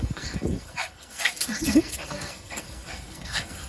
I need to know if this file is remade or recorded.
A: remade